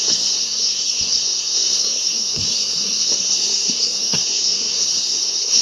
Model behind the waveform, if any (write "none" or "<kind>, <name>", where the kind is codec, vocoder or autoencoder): codec, SNAC